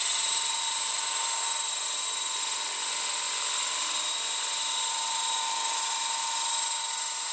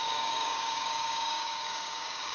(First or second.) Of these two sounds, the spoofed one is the second